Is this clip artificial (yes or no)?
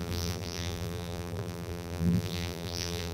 yes